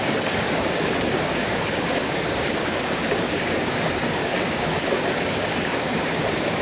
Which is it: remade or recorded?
remade